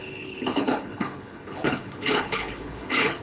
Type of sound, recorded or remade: remade